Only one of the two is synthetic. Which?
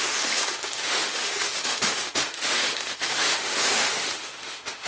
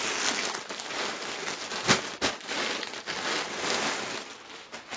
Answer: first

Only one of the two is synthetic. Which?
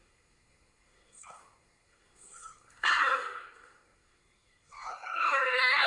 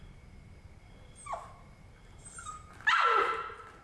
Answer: first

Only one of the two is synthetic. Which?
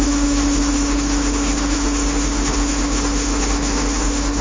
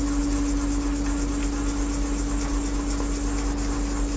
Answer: first